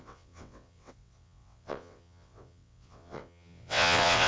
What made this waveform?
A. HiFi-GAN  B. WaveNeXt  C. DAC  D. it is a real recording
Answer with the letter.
B